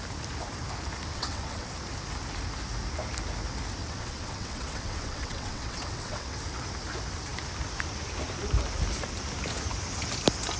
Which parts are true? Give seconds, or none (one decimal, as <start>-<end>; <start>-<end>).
0.0-1.1; 1.7-3.8; 6.4-10.6